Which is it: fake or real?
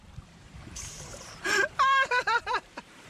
fake